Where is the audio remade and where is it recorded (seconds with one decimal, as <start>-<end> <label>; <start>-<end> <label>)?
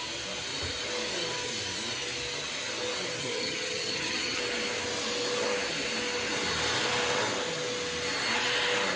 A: 0.0-3.2 recorded; 3.2-4.4 remade; 4.4-9.0 recorded